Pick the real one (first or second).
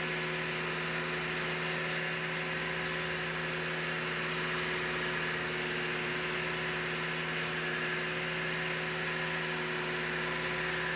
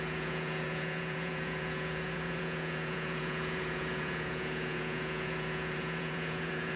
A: first